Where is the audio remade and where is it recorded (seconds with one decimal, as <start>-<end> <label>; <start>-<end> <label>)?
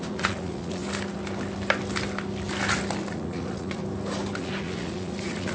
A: 0.0-0.8 remade; 0.8-3.1 recorded; 3.1-3.8 remade; 3.8-4.4 recorded; 4.4-5.5 remade